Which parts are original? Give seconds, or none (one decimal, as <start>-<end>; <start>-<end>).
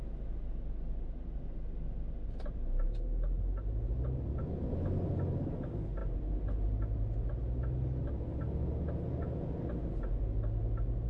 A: 0.0-11.1